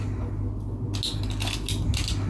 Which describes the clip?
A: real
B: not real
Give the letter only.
A